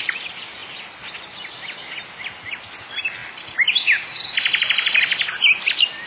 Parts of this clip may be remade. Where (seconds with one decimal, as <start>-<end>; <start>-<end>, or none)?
none